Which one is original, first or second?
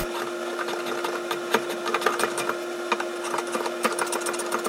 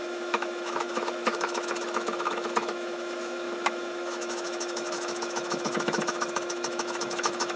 first